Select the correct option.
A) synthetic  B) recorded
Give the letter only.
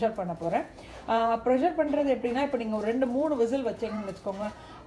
A